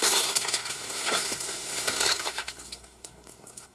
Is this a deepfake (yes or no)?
yes